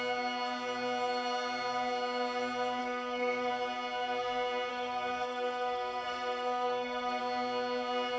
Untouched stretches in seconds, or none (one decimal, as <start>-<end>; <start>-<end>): 0.0-2.8; 3.5-4.7; 7.2-8.2